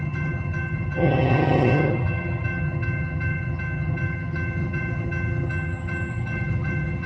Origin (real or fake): fake